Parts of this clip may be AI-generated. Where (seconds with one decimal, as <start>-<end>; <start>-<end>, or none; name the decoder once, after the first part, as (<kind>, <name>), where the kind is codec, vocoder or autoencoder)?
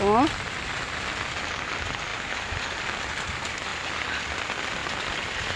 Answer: none